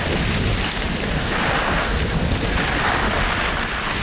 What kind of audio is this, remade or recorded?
recorded